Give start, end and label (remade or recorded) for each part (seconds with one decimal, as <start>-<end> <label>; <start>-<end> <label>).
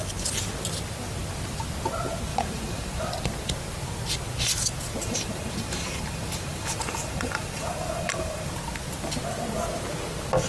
0.0-2.3 recorded; 2.3-3.1 remade; 3.1-5.0 recorded; 5.0-8.5 remade; 8.5-10.5 recorded